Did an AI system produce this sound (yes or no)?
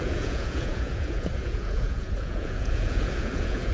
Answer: yes